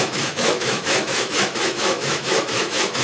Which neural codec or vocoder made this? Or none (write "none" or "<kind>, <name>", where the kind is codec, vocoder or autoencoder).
autoencoder, DAC-VAE